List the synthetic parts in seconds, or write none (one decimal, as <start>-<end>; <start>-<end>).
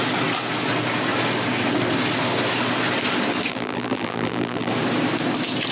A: 3.5-4.7